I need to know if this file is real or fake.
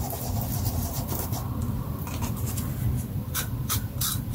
fake